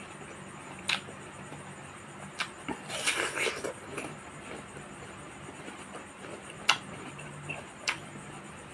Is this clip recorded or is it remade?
remade